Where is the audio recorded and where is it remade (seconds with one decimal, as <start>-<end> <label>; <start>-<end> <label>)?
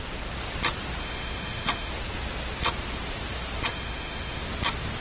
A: 0.0-1.0 recorded; 1.0-1.9 remade; 1.9-3.7 recorded; 3.7-4.4 remade; 4.4-5.0 recorded